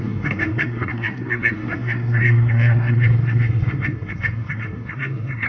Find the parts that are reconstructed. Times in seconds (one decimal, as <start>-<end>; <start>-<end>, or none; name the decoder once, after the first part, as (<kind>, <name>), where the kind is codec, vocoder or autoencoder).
0.0-5.5 (codec, SNAC)